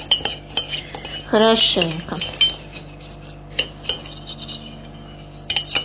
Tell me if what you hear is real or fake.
real